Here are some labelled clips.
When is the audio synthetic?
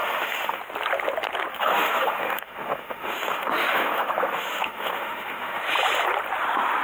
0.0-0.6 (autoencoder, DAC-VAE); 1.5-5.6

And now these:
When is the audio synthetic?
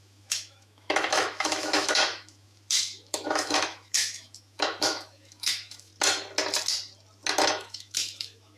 0.0-5.9 (autoencoder, DAC-VAE); 7.5-8.6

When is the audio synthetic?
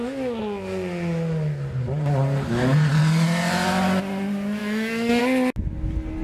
4.6-5.2 (autoencoder, DAC-VAE)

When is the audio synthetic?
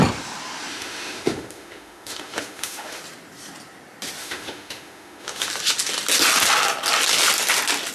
0.7-3.0 (autoencoder, DAC-VAE); 4.2-5.5